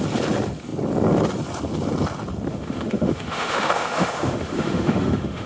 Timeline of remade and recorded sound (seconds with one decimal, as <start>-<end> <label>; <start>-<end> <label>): 0.0-2.5 recorded; 2.5-5.5 remade